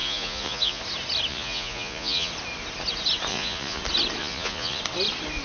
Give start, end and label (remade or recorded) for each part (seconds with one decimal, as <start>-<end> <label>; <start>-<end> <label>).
0.0-0.8 remade; 0.8-1.3 recorded; 1.3-2.3 remade; 2.3-3.3 recorded; 3.3-3.8 remade; 3.8-4.2 recorded; 4.2-4.8 remade; 4.8-5.4 recorded

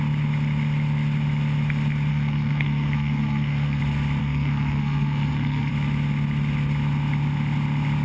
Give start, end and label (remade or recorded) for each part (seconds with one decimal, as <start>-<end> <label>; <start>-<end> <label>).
0.0-2.1 recorded; 2.1-3.8 remade; 3.8-4.2 recorded; 4.2-5.7 remade; 5.7-8.0 recorded

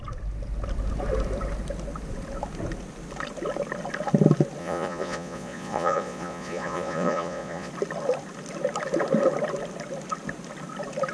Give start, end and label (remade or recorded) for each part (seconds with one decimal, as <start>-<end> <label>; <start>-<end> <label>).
0.0-4.6 recorded; 4.6-7.7 remade; 7.7-11.1 recorded